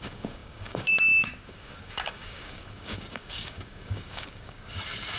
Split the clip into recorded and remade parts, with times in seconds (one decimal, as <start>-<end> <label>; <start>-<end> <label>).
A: 0.0-5.2 remade